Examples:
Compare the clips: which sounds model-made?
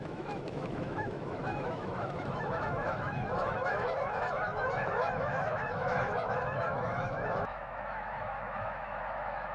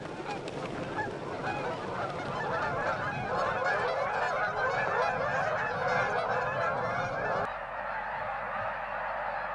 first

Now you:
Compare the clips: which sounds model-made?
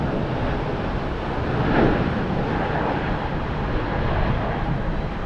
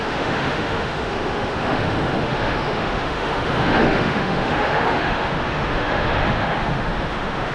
second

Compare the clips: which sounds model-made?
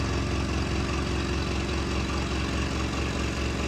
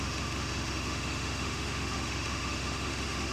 second